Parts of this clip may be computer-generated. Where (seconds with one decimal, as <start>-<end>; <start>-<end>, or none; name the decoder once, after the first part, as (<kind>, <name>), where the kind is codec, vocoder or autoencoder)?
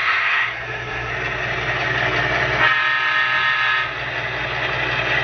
0.0-1.1 (codec, SNAC)